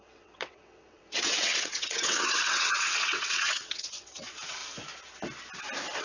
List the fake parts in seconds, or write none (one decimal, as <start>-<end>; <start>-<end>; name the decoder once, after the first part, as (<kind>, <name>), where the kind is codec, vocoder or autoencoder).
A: 0.0-4.6 (vocoder, WaveNeXt)